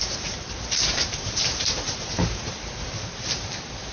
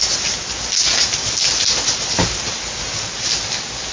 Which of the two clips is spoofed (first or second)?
first